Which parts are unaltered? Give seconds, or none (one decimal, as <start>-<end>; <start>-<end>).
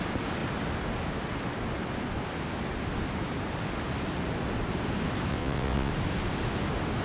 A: 0.0-5.3; 5.9-7.0